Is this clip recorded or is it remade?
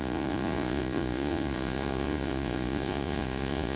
remade